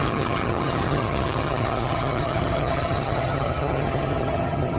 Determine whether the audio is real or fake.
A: fake